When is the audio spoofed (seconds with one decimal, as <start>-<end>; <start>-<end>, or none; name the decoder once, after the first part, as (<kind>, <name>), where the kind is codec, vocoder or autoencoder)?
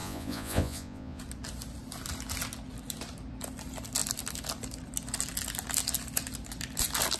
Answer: 0.0-1.2 (vocoder, Vocos)